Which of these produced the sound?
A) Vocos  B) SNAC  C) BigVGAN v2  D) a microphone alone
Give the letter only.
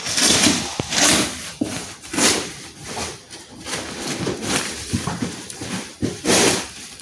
C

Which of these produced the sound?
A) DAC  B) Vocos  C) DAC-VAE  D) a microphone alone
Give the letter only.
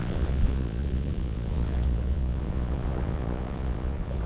B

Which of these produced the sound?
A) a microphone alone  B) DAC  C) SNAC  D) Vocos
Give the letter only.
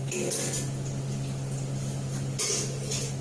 A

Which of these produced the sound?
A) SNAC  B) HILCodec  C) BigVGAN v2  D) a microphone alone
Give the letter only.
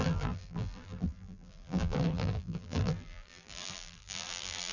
C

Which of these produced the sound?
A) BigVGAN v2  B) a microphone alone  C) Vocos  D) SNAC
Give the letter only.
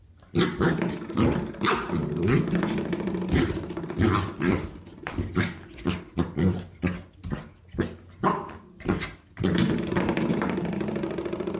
A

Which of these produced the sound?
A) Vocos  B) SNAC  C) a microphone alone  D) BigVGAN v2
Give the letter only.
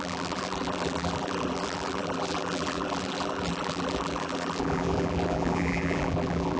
D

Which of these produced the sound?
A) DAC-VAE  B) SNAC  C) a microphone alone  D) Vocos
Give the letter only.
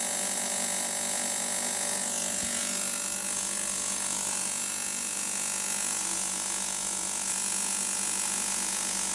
D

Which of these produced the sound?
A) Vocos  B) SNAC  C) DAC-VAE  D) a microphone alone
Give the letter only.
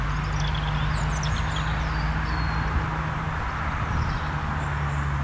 D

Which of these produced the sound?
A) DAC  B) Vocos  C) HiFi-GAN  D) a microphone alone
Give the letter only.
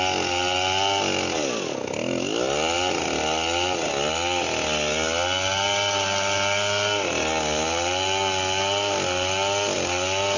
D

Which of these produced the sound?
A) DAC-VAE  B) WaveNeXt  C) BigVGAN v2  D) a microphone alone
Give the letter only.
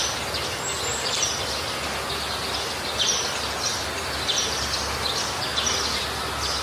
D